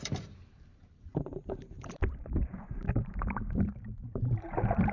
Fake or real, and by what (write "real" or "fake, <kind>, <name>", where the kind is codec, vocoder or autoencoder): fake, vocoder, BigVGAN v2